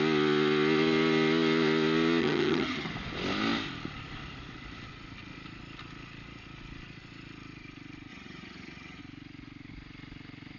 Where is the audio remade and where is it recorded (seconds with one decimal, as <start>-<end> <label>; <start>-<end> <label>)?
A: 0.0-2.2 recorded; 2.2-2.9 remade; 2.9-8.1 recorded; 8.1-9.0 remade; 9.0-10.6 recorded